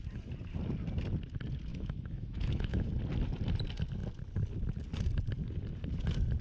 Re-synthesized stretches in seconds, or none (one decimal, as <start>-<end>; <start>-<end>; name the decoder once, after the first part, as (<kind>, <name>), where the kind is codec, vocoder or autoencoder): 1.7-2.9 (autoencoder, DAC-VAE)